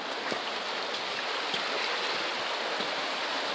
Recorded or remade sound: recorded